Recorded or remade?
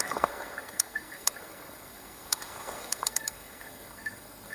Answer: remade